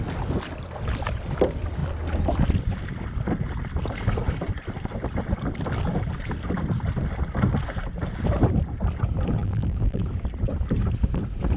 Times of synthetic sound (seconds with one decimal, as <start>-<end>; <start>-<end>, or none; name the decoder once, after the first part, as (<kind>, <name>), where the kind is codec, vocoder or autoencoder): 9.4-10.0 (vocoder, BigVGAN v2)